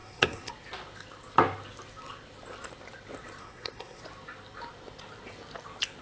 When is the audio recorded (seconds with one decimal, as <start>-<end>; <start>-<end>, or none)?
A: 0.5-3.4; 4.0-6.0